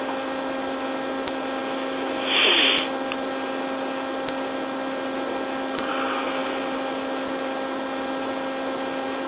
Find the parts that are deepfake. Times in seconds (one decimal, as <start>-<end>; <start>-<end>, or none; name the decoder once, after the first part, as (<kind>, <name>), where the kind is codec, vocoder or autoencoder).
none